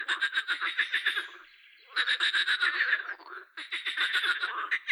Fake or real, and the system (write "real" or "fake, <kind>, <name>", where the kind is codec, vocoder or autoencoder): real